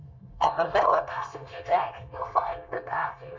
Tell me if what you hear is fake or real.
fake